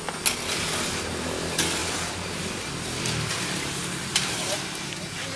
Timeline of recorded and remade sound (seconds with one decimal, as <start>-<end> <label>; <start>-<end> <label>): 0.0-5.4 recorded